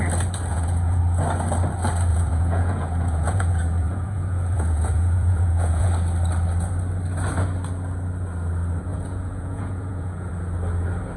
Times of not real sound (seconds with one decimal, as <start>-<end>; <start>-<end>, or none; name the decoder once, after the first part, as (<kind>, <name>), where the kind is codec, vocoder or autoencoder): 0.5-1.0 (vocoder, Vocos); 2.1-5.9; 8.9-10.3